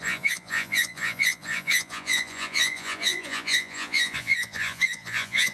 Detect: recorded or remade remade